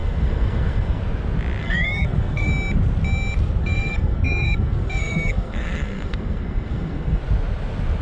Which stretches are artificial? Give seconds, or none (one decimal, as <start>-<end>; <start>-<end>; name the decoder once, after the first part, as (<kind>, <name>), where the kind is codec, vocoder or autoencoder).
0.0-1.0 (codec, SNAC); 1.6-2.5; 3.6-7.2